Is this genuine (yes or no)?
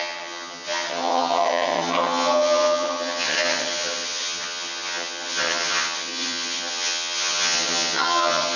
no